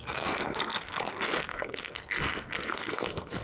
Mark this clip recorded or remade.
remade